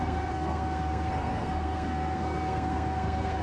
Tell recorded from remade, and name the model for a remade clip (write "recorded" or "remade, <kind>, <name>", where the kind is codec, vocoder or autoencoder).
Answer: remade, codec, SNAC